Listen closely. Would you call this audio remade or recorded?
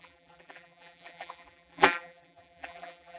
remade